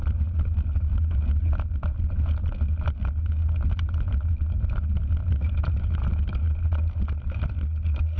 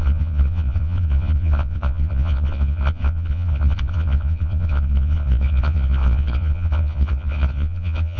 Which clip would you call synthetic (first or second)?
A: second